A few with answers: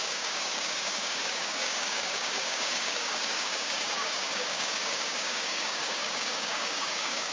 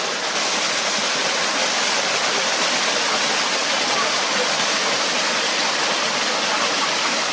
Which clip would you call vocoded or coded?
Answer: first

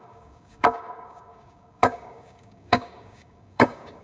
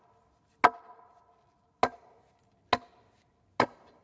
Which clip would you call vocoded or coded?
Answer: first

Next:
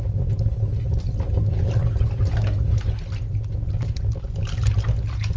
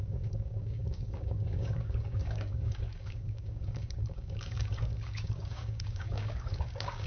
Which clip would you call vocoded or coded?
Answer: second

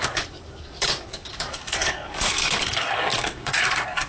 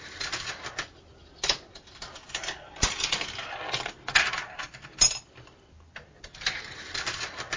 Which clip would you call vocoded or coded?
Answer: first